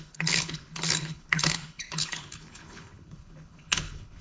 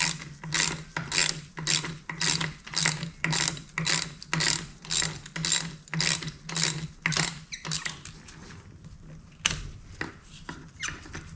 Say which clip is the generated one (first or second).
first